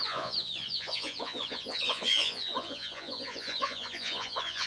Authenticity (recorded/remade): remade